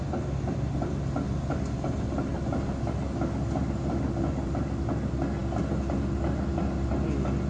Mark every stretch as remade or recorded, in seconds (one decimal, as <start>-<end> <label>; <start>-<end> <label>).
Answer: 0.0-7.5 recorded